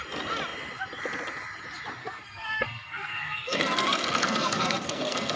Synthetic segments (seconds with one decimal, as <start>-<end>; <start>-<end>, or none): 2.0-5.4

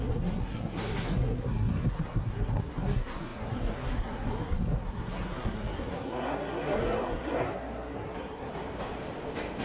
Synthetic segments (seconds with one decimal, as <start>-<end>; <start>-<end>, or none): 0.0-8.5